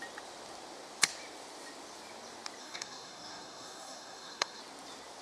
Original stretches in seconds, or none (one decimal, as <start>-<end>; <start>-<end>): 0.0-2.6; 4.6-5.2